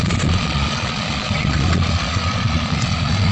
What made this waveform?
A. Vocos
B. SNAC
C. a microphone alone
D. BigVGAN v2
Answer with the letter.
A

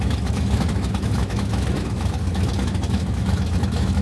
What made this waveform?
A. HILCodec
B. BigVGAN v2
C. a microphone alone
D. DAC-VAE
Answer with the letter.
D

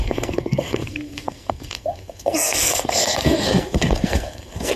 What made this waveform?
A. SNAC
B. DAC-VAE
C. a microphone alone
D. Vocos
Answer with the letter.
A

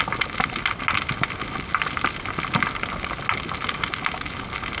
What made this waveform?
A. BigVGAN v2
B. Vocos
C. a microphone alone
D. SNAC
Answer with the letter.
C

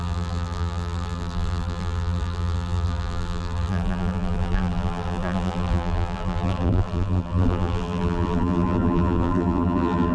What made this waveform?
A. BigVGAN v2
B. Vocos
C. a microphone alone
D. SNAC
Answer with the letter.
A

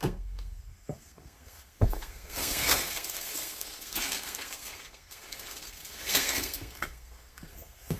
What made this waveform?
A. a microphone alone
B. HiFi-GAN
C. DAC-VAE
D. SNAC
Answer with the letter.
D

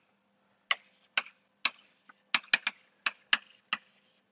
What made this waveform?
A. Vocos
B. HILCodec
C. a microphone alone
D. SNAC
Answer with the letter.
C